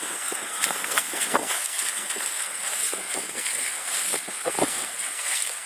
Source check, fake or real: fake